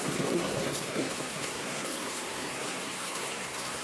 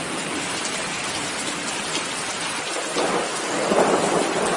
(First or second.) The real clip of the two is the second